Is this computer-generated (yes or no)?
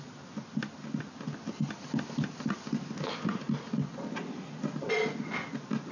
no